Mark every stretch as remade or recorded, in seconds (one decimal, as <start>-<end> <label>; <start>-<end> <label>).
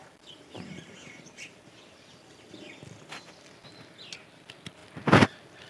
0.0-3.4 remade; 3.4-5.7 recorded